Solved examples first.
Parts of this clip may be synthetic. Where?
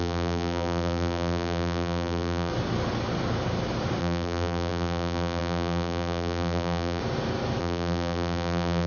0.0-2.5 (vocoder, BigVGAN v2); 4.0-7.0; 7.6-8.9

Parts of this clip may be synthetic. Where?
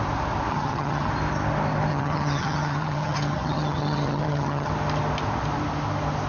0.5-1.1 (vocoder, HiFi-GAN); 1.9-4.7